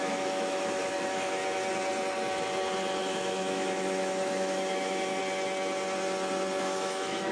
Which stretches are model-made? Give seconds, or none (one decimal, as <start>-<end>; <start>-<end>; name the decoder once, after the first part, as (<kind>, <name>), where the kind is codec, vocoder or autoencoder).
0.0-1.4 (autoencoder, DAC-VAE); 3.0-5.2; 6.6-7.3